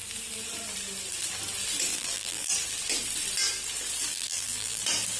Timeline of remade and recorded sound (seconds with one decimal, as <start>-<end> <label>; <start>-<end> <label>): 0.0-1.9 recorded; 1.9-2.5 remade; 2.5-4.1 recorded; 4.1-4.8 remade; 4.8-5.2 recorded